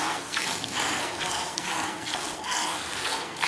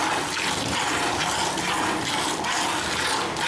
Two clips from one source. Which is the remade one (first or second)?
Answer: first